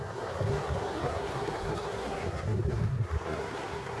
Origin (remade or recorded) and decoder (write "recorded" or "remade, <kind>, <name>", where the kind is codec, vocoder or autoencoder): remade, codec, SNAC